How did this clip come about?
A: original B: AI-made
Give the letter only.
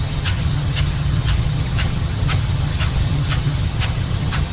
B